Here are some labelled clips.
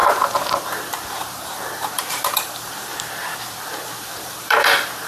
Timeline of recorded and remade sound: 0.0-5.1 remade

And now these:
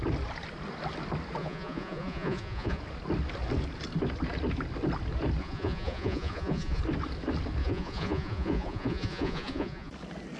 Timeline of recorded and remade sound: 0.0-1.4 recorded; 1.4-2.8 remade; 2.8-5.4 recorded; 5.4-6.8 remade; 6.8-7.6 recorded; 7.6-9.9 remade; 9.9-10.4 recorded

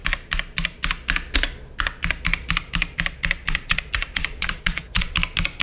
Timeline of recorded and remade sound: 0.0-3.4 recorded; 3.4-5.1 remade; 5.1-5.6 recorded